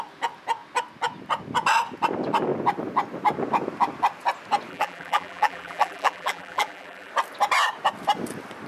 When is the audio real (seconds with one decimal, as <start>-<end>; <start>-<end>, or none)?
0.0-4.7; 7.1-8.7